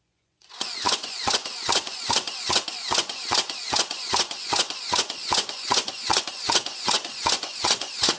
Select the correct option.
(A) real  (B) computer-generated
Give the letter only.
B